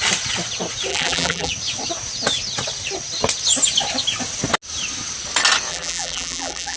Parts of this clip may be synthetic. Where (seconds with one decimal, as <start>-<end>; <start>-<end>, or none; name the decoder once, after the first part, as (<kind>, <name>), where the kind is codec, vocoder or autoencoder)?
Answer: 0.9-1.5 (vocoder, BigVGAN v2); 5.7-6.8